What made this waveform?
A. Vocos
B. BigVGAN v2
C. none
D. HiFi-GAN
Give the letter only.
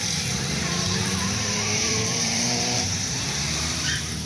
B